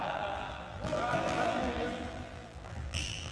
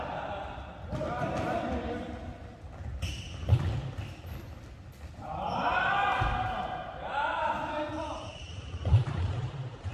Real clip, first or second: second